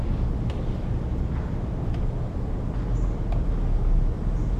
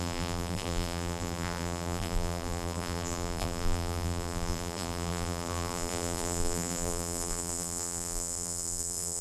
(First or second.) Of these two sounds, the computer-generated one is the second